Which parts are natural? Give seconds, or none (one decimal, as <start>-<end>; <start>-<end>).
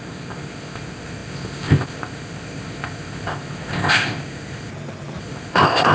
4.7-5.2